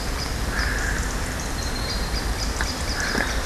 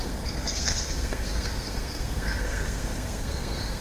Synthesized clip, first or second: second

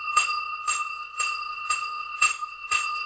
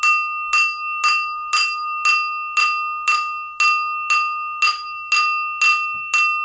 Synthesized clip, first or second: first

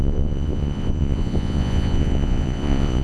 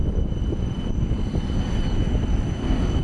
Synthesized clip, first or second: first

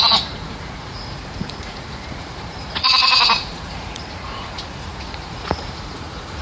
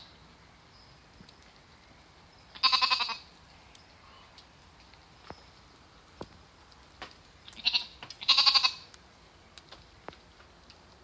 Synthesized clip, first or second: first